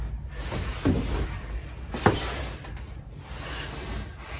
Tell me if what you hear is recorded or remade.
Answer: recorded